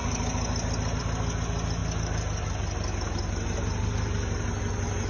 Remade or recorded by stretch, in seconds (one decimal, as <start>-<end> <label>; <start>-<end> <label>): 0.0-5.1 recorded